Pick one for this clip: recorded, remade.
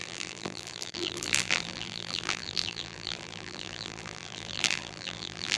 remade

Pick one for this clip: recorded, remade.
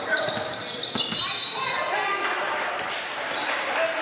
recorded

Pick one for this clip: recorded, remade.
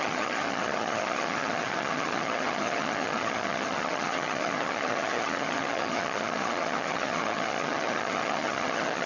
remade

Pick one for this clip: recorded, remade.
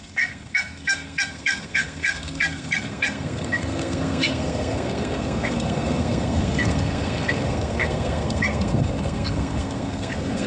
remade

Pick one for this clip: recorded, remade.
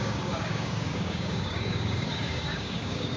remade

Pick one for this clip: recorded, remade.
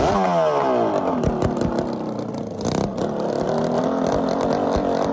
recorded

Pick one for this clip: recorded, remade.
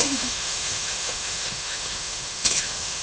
remade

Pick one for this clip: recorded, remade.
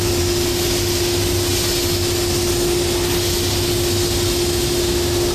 recorded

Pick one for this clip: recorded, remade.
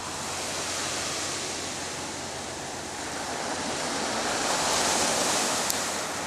recorded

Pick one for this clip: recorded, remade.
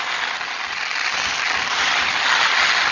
recorded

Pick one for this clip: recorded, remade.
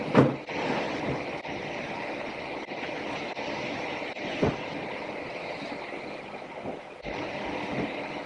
recorded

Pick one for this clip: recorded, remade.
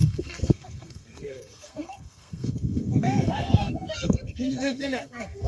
remade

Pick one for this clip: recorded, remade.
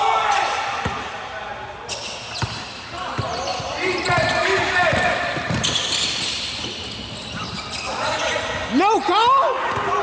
recorded